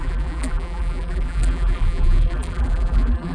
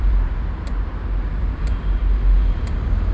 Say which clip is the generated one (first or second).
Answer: first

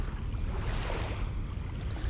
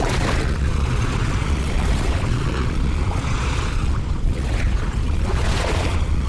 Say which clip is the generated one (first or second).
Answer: second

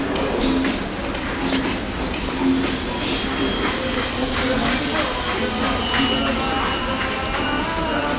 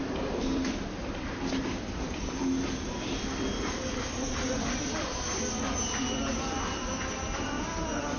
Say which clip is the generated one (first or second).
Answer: second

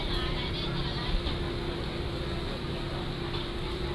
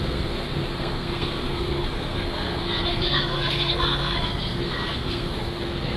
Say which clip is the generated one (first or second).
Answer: second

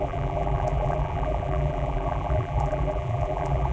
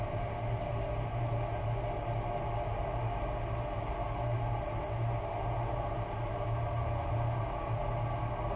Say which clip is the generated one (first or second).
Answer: first